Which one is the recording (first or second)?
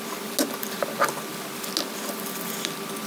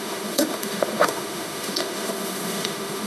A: first